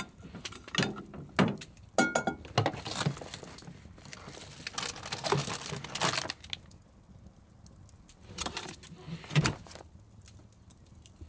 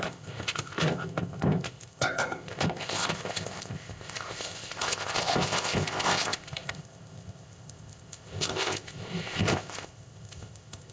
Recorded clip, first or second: first